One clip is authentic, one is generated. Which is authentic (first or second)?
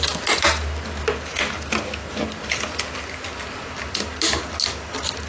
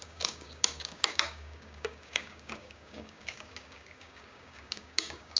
first